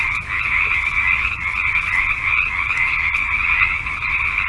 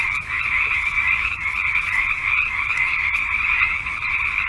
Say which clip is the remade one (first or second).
second